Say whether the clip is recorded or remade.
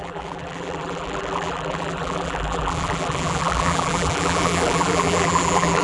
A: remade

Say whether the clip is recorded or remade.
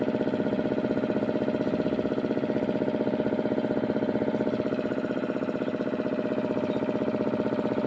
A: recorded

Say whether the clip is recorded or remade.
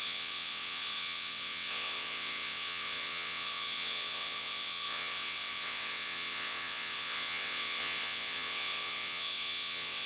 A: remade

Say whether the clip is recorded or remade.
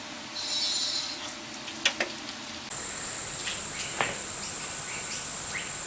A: recorded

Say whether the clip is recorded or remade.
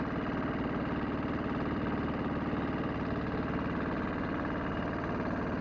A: recorded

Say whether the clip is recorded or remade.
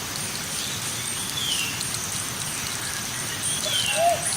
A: recorded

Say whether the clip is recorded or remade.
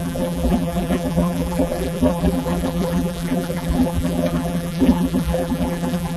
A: remade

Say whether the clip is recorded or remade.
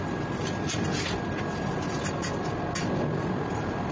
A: recorded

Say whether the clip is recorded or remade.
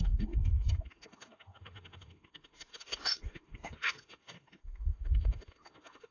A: remade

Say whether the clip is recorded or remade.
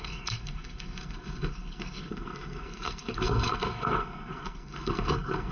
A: remade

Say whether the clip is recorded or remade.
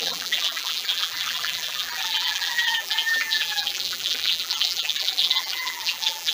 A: remade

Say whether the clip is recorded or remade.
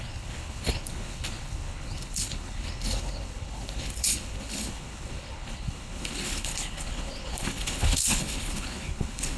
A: remade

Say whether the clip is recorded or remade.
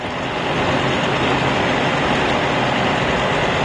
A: recorded